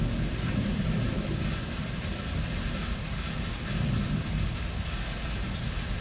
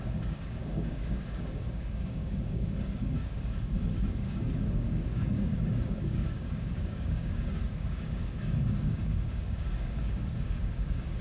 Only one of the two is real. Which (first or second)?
first